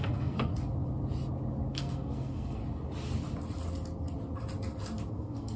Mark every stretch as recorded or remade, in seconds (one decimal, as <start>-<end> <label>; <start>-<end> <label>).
0.0-0.5 remade; 0.5-1.8 recorded; 1.8-2.6 remade; 2.6-5.1 recorded; 5.1-5.6 remade